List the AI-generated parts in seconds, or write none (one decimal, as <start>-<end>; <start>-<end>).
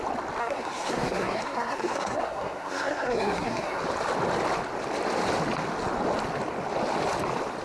0.4-3.8